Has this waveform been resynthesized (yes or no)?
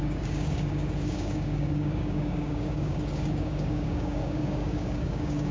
yes